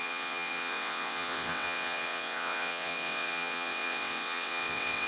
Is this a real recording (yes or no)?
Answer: no